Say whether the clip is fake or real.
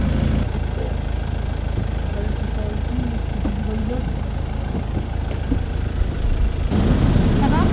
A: real